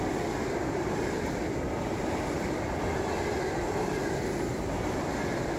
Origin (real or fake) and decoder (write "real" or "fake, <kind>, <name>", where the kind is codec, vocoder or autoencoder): real